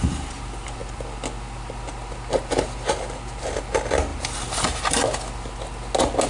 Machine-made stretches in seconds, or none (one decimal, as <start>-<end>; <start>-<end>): none